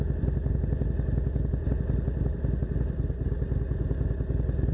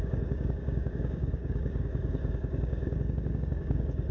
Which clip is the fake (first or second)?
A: second